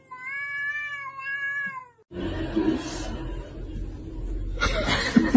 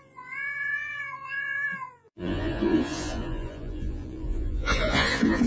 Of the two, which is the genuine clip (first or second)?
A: first